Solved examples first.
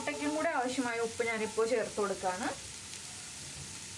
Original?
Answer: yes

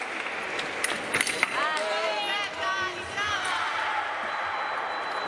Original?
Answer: yes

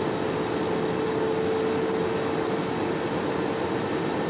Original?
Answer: yes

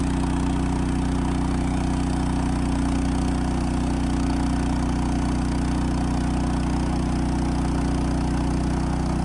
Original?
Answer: yes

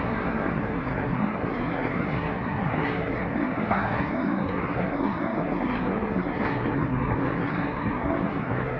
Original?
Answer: no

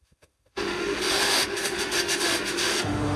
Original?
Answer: no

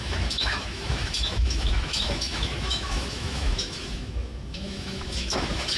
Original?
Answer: no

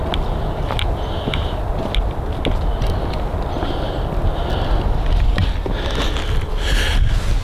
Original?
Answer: yes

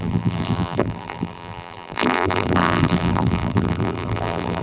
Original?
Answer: no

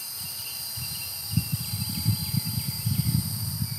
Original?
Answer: yes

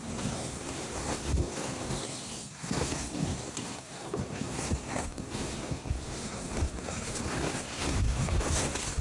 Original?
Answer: no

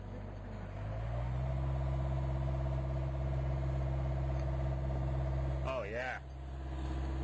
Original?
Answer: yes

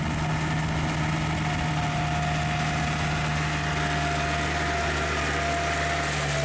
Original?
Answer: yes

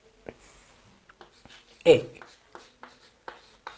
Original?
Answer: yes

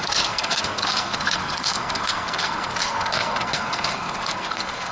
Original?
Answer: no